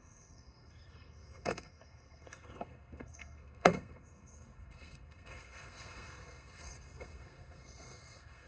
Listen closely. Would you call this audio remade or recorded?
remade